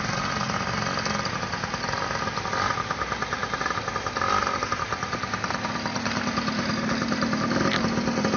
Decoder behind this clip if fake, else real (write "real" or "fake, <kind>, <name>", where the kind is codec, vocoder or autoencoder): real